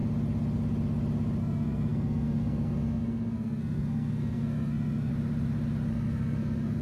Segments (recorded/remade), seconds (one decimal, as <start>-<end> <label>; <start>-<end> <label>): 0.0-1.4 recorded; 1.4-5.1 remade; 5.1-5.9 recorded; 5.9-6.8 remade